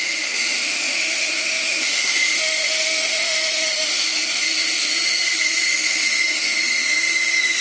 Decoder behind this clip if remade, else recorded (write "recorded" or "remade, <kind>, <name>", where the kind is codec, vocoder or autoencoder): remade, autoencoder, DAC-VAE